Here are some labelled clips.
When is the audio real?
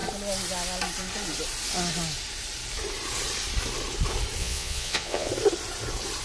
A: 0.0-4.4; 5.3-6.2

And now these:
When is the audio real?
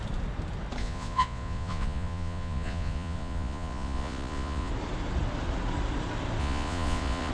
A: 0.0-0.8; 4.7-6.4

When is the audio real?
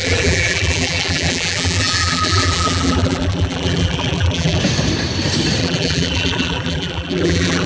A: 4.6-5.6